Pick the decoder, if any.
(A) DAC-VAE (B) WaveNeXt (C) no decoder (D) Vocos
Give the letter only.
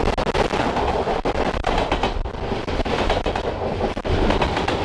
C